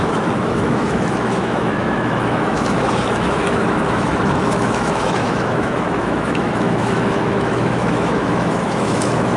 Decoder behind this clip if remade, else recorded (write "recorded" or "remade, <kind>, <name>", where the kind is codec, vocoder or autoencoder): remade, autoencoder, DAC-VAE